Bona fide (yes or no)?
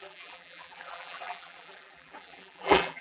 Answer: no